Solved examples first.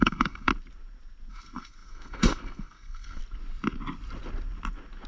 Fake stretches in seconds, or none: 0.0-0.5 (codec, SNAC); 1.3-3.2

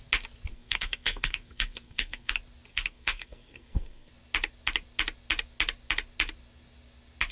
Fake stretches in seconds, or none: 0.5-2.3 (codec, SNAC); 2.7-4.1